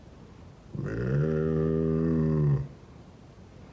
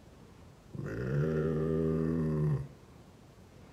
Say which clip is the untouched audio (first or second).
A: first